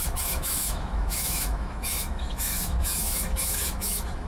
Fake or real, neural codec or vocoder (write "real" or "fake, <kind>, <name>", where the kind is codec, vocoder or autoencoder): fake, autoencoder, DAC-VAE